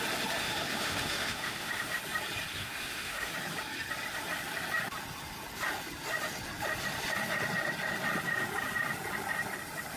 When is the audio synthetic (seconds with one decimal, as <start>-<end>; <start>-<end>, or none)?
0.4-2.0; 2.6-3.3